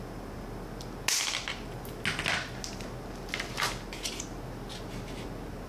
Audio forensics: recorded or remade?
recorded